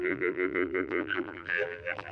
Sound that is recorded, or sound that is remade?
remade